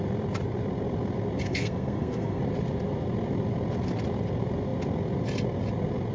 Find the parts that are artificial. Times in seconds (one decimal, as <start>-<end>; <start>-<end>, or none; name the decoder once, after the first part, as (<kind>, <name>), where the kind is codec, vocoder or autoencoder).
1.4-2.4 (codec, SNAC)